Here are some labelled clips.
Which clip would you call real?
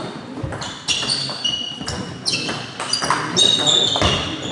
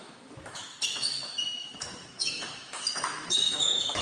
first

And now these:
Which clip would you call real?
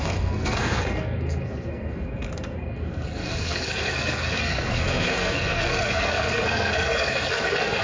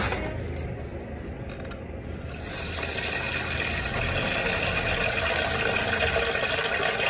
second